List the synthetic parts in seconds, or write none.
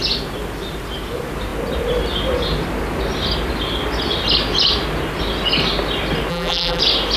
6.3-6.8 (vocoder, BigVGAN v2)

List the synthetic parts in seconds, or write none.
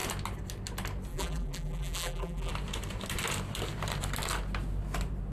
1.1-2.5 (vocoder, BigVGAN v2)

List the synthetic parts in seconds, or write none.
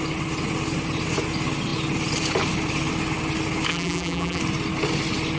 3.7-4.4 (vocoder, BigVGAN v2)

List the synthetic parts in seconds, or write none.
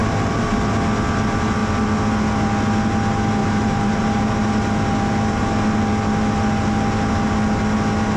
0.0-0.6 (vocoder, BigVGAN v2); 3.4-4.2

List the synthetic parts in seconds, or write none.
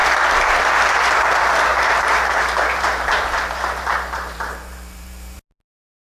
1.7-5.4 (vocoder, BigVGAN v2)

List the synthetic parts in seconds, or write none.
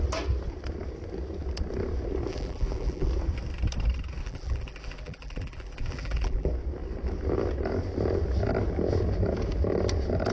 2.3-3.1 (vocoder, BigVGAN v2); 4.2-6.5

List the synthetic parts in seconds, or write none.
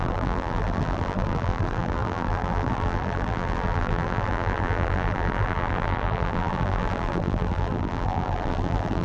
0.0-9.0 (vocoder, BigVGAN v2)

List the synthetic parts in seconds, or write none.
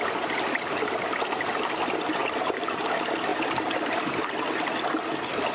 3.3-4.0 (vocoder, BigVGAN v2)